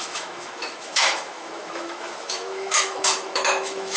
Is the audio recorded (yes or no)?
no